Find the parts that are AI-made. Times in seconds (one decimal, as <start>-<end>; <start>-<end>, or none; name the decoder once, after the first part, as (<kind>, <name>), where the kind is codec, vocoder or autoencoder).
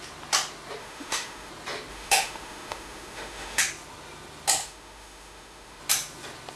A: 0.8-1.5 (autoencoder, DAC-VAE); 1.9-3.6; 4.6-5.8